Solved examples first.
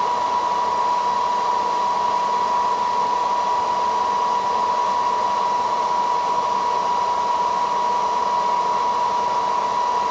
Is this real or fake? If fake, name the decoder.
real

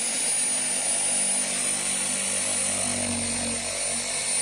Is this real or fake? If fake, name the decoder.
real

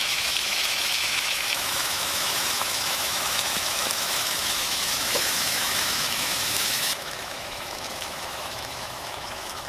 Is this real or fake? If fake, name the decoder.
fake, autoencoder, DAC-VAE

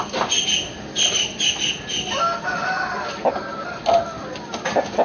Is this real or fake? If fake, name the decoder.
real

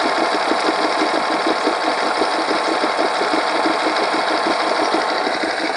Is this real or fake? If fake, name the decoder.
real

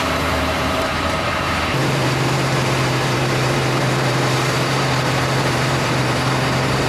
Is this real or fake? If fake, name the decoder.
fake, vocoder, BigVGAN v2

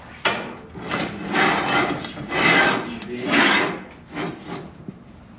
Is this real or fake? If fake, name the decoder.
real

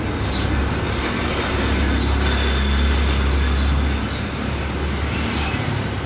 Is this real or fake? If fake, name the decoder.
real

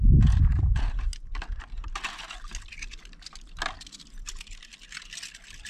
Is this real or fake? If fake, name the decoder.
real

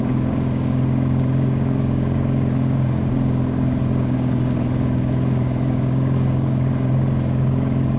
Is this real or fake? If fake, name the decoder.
fake, codec, DAC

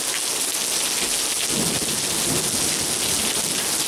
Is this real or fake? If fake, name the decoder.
real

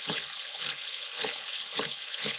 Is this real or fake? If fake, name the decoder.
fake, codec, HILCodec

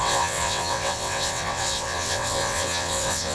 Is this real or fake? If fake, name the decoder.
fake, vocoder, WaveNeXt